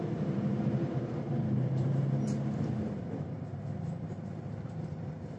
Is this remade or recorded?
remade